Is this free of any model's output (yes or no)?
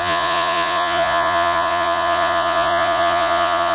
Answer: no